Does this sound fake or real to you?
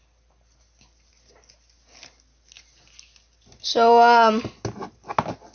real